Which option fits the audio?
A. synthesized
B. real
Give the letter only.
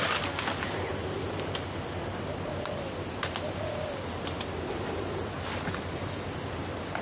B